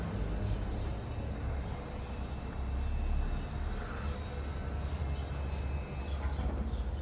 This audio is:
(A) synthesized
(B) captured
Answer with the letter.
B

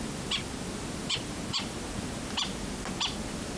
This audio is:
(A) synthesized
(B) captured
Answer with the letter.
B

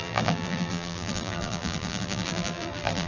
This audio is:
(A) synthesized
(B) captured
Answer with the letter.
A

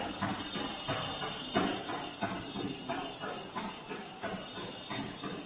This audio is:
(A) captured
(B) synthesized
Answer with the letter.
A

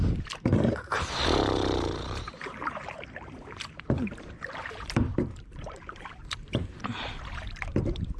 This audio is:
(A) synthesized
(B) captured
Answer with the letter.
A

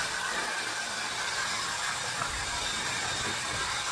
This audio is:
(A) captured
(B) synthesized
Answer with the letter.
A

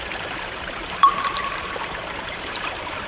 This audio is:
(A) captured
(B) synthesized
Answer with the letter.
B